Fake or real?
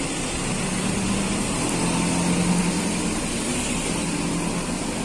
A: real